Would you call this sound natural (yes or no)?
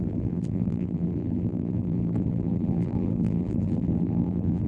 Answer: no